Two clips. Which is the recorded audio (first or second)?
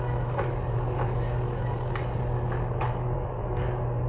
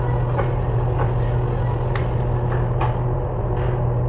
second